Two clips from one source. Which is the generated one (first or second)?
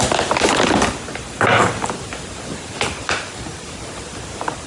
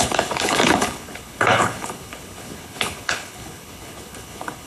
second